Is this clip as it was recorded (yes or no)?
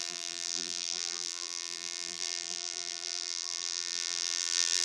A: no